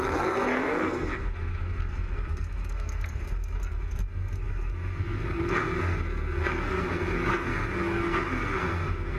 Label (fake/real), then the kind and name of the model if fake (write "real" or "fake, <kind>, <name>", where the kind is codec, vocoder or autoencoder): fake, codec, SNAC